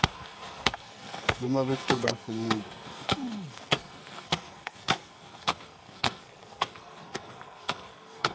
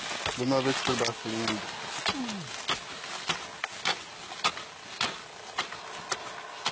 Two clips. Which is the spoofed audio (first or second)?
first